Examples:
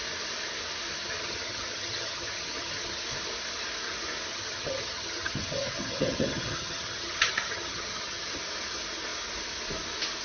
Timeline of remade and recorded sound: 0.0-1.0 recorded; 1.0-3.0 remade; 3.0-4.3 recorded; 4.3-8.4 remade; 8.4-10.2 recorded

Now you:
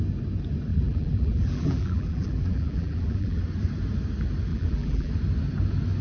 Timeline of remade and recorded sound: 0.0-0.7 recorded; 0.7-3.4 remade; 3.4-4.5 recorded; 4.5-5.1 remade; 5.1-6.0 recorded

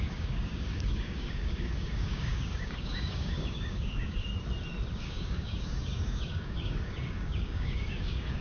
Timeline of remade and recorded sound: 0.0-4.3 remade; 4.3-5.0 recorded; 5.0-8.4 remade